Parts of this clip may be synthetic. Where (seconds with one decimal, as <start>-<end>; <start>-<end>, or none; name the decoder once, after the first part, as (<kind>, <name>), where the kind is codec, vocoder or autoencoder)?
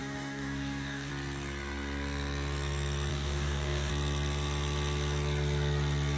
0.0-1.1 (codec, DAC); 3.1-3.9